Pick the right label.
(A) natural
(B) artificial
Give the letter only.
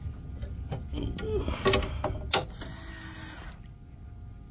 A